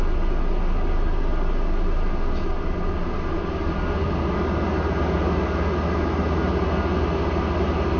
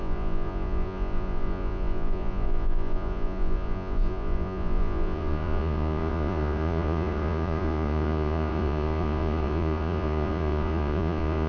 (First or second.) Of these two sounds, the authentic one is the first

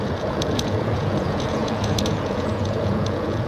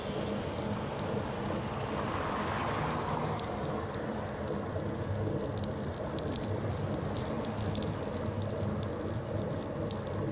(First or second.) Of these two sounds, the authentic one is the second